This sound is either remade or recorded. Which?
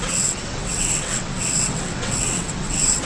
remade